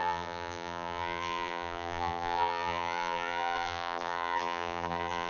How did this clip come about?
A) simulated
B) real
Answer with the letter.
A